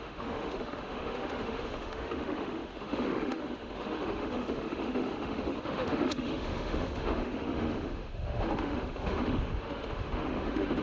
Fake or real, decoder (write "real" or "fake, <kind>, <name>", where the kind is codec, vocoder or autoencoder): fake, autoencoder, DAC-VAE